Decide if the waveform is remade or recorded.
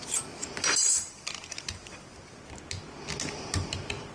recorded